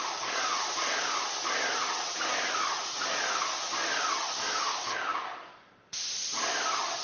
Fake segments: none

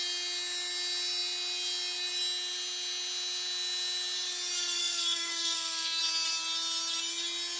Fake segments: 4.8-6.0 (codec, SNAC)

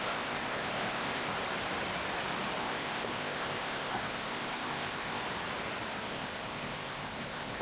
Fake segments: 0.0-1.3 (codec, ZipCodec); 2.6-5.2; 6.0-7.6

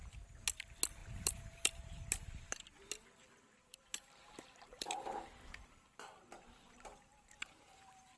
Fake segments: 1.0-2.0 (vocoder, BigVGAN v2); 3.6-6.3; 7.1-8.2

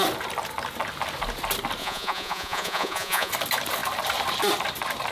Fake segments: 1.8-3.3 (vocoder, Vocos)

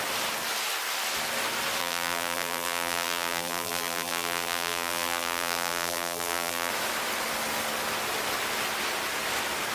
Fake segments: 1.8-6.7 (vocoder, BigVGAN v2)

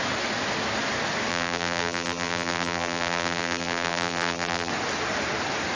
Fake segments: 1.3-4.7 (vocoder, BigVGAN v2)